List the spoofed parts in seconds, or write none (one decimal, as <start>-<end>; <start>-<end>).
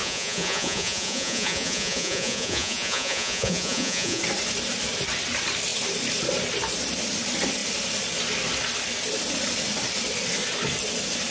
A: 0.0-4.2